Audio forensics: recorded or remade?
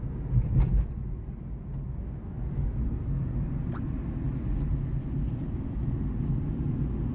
recorded